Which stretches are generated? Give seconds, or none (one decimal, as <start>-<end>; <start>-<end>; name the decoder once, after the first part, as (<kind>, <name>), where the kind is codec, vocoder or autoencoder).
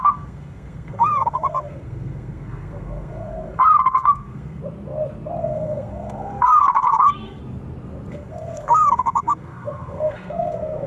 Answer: 0.0-4.6 (codec, SNAC); 5.4-7.4; 8.1-10.9